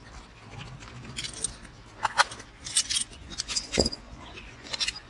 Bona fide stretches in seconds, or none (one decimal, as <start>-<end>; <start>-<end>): 0.0-2.6